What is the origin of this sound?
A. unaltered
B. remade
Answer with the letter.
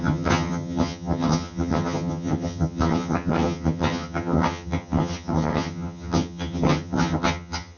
B